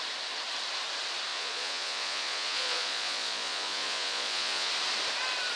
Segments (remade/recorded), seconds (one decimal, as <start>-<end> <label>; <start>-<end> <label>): 0.0-1.3 recorded; 1.3-4.7 remade; 4.7-5.6 recorded